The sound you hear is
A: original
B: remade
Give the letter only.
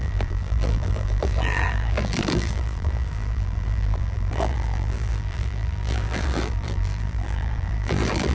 B